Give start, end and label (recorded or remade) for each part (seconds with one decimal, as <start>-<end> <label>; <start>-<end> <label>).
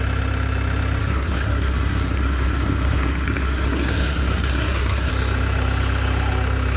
0.0-1.0 recorded; 1.0-5.1 remade; 5.1-6.8 recorded